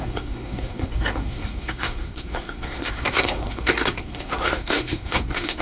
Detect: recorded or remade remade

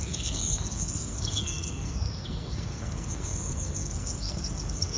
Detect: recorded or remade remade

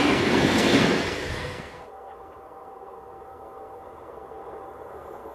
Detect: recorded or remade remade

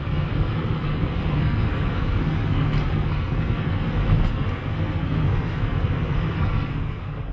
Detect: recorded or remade remade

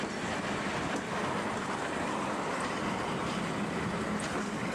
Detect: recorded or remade recorded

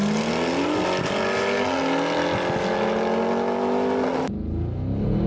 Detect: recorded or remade recorded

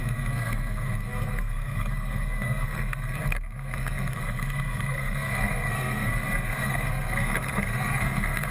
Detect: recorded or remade remade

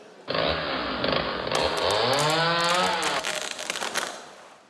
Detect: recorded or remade recorded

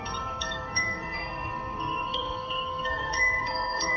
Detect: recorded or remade remade